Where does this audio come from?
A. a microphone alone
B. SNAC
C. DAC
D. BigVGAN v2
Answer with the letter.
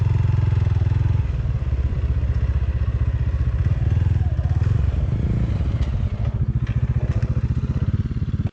A